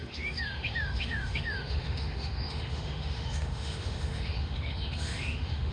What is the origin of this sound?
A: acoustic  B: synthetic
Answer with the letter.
B